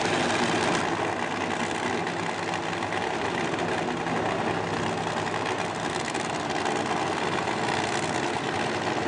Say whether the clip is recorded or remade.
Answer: recorded